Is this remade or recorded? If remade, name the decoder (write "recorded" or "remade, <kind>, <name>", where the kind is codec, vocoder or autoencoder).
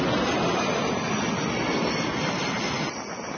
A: recorded